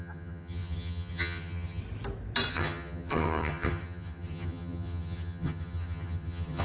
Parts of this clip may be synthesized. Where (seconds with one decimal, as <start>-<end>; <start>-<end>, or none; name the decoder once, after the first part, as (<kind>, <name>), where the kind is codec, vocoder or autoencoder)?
0.0-1.8 (vocoder, HiFi-GAN); 2.5-6.6